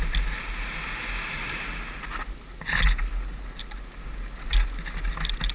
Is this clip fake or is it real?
real